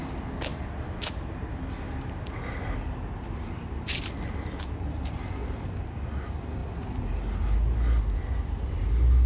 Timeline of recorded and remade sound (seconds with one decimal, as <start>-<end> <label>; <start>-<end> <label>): 0.0-9.3 recorded